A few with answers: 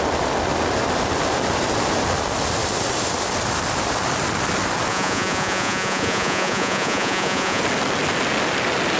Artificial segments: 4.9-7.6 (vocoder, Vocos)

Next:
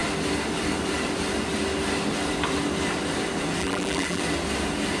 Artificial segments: 3.6-4.2 (vocoder, BigVGAN v2)

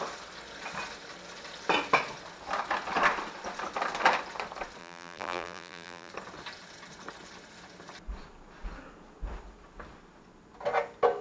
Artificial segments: 4.8-6.1 (vocoder, BigVGAN v2)

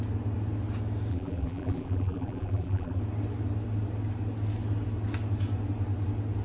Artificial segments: 1.1-3.0 (vocoder, BigVGAN v2)

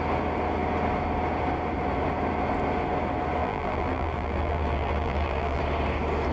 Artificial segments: 3.4-5.6 (vocoder, BigVGAN v2)

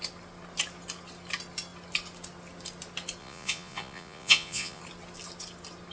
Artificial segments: 3.2-4.8 (vocoder, Vocos)

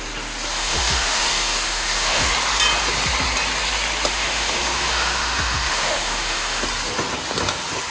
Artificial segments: 0.5-2.3 (autoencoder, DAC-VAE); 4.1-6.6

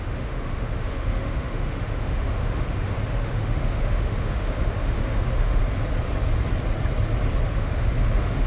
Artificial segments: 0.0-5.6 (autoencoder, DAC-VAE); 7.5-8.5